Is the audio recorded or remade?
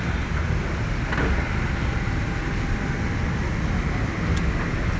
recorded